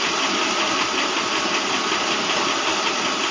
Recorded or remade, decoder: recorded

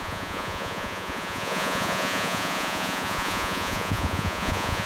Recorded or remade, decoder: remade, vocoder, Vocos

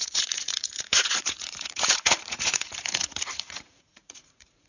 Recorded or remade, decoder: remade, vocoder, Vocos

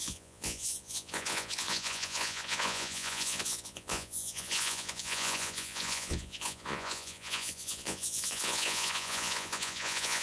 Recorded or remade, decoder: remade, vocoder, Vocos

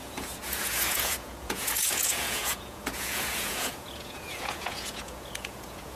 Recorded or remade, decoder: remade, vocoder, Vocos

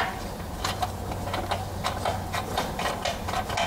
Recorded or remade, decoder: recorded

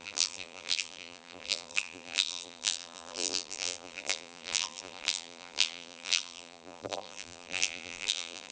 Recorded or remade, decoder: remade, vocoder, BigVGAN v2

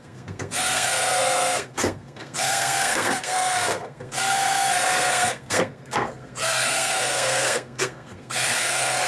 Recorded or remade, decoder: remade, codec, SNAC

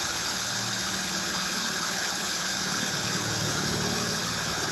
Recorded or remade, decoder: remade, codec, HILCodec